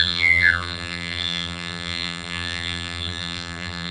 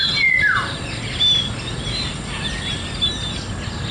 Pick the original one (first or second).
second